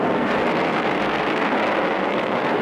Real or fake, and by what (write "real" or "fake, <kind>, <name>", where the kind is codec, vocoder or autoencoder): fake, codec, SNAC